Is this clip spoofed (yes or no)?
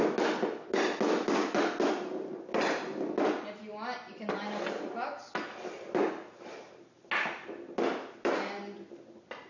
no